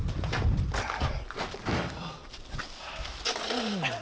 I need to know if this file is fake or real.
real